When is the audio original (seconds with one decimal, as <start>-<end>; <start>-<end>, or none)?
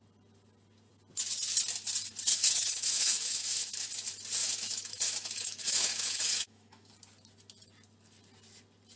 0.0-2.3; 3.9-4.4; 6.9-9.0